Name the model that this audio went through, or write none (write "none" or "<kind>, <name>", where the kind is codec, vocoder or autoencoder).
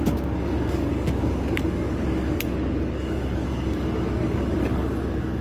codec, DAC